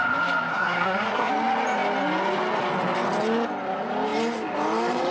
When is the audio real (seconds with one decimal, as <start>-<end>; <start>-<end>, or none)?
0.0-0.5; 1.3-5.1